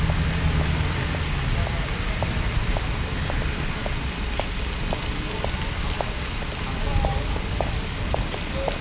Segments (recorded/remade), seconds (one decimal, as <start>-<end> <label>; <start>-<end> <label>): 0.0-7.1 recorded; 7.1-8.0 remade; 8.0-8.8 recorded